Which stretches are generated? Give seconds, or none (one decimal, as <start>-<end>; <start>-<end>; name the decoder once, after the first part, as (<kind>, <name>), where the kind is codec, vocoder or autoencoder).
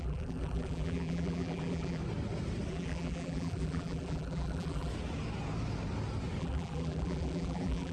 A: 0.0-2.0 (vocoder, BigVGAN v2); 2.7-4.9; 6.4-7.9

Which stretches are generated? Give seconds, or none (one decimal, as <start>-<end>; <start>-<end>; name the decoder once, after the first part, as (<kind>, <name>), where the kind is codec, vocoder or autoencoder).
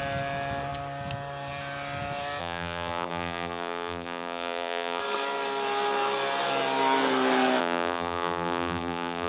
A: 2.4-5.0 (vocoder, BigVGAN v2); 7.6-9.3